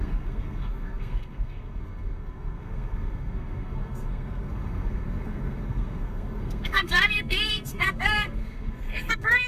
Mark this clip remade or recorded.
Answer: remade